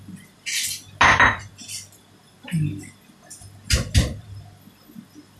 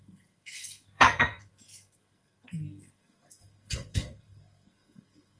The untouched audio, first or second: first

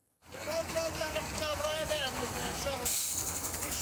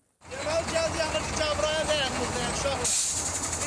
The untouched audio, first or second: second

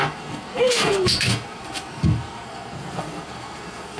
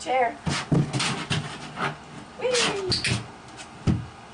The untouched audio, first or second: second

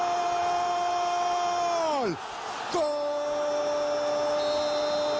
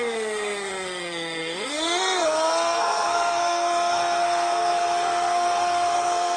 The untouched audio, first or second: first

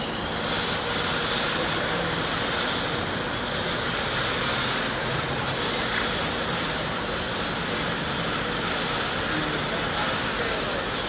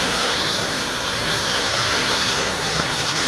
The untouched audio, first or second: first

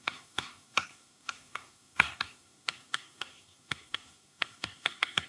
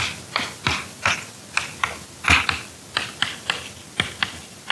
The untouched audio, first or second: second